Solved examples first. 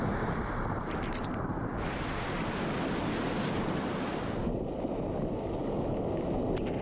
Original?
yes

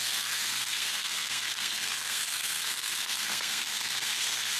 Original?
no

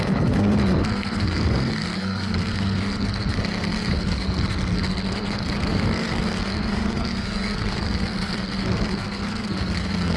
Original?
no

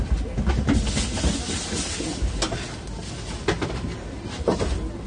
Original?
yes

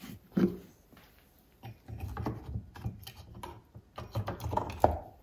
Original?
yes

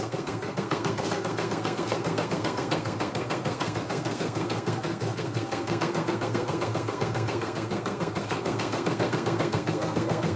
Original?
no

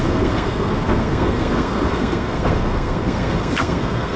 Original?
no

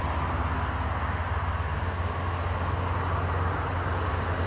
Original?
yes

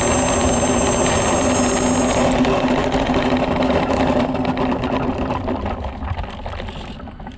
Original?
yes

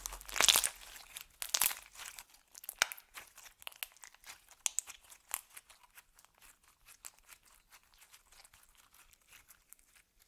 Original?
yes